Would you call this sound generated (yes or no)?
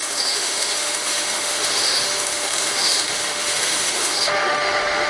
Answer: yes